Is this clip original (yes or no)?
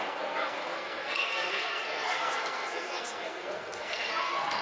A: no